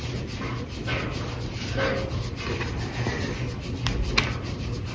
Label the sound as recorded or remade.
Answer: recorded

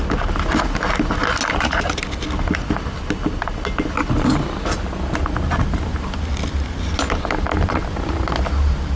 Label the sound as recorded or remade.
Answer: recorded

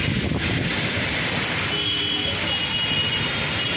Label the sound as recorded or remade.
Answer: recorded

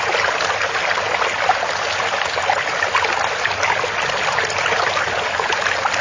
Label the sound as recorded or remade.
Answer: recorded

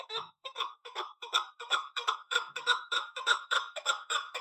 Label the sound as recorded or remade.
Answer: remade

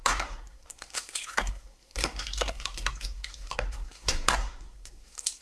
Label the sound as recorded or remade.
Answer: remade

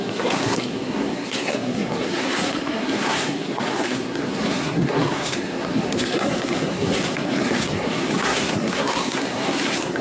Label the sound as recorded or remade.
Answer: remade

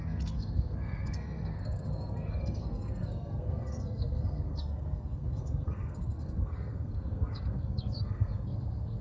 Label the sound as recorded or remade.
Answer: remade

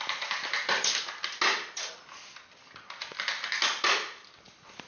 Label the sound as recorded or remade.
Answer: recorded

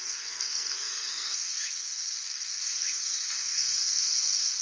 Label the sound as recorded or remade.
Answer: remade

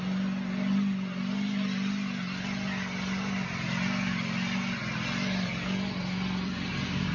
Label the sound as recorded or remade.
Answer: recorded